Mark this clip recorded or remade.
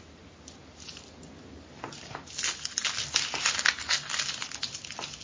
recorded